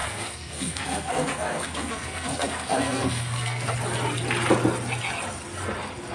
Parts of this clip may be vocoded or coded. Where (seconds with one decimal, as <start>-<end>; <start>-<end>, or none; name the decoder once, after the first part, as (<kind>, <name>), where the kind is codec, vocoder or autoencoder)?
0.0-3.7 (codec, SNAC)